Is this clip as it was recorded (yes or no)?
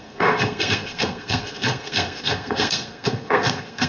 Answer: no